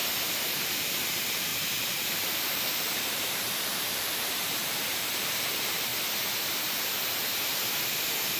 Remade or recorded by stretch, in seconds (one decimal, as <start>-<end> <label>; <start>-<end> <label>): 0.0-0.5 recorded; 0.5-5.9 remade; 5.9-6.7 recorded; 6.7-8.4 remade

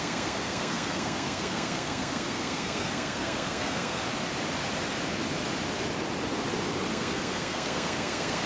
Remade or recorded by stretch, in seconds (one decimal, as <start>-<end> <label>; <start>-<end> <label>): 0.0-4.0 remade; 4.0-6.9 recorded; 6.9-8.5 remade

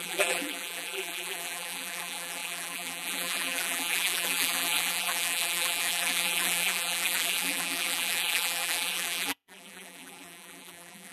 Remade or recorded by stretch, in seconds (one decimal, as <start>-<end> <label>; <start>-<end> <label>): 0.0-11.1 remade

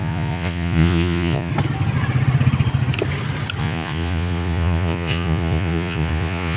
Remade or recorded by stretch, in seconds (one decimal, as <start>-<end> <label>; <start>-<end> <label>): 0.0-1.5 remade; 1.5-3.6 recorded; 3.6-6.6 remade